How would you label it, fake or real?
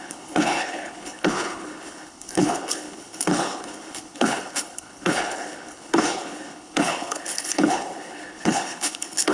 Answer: fake